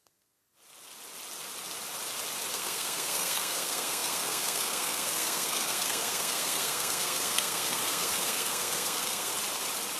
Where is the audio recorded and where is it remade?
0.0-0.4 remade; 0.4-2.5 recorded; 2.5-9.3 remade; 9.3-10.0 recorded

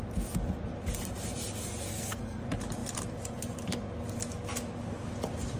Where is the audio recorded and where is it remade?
0.0-1.9 recorded; 1.9-2.4 remade; 2.4-5.6 recorded

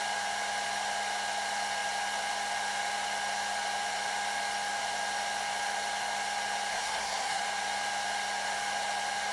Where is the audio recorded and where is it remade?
0.0-6.7 recorded; 6.7-7.4 remade; 7.4-9.3 recorded

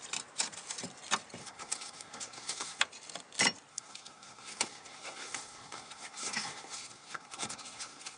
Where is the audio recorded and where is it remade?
0.0-1.4 recorded; 1.4-2.8 remade; 2.8-3.7 recorded; 3.7-8.2 remade